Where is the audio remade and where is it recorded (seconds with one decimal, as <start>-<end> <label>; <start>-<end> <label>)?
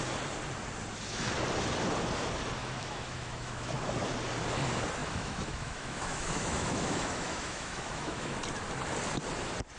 0.0-2.6 recorded; 2.6-3.9 remade; 3.9-5.0 recorded; 5.0-8.4 remade; 8.4-9.8 recorded